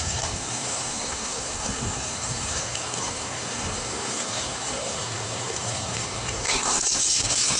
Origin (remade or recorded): remade